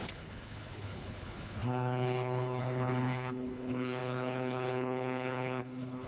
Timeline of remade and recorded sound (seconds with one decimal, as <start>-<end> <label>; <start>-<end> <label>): 0.0-6.1 remade